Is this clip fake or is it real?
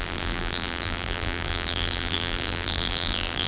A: fake